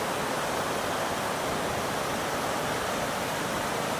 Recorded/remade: recorded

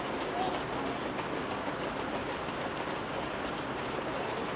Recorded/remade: recorded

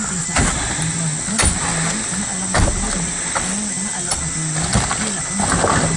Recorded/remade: recorded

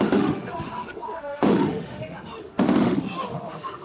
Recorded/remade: remade